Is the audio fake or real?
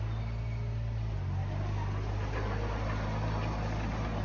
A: real